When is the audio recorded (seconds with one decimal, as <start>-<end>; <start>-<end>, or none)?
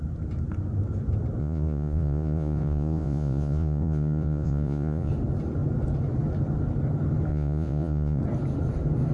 0.0-1.4; 5.1-7.3; 8.2-9.1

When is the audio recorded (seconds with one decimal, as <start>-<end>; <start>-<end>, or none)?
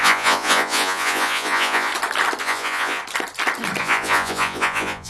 1.9-2.4; 3.0-3.8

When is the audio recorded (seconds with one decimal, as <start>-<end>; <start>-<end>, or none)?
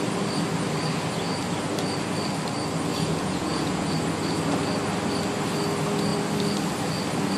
0.0-2.9; 3.9-7.4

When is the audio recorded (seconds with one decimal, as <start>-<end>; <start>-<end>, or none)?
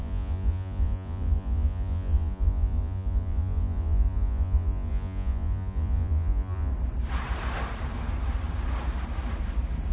6.7-9.9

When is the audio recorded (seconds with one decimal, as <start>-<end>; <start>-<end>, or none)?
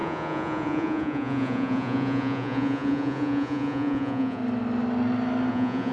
4.4-5.5